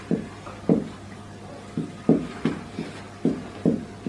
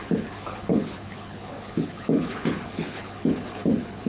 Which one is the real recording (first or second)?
first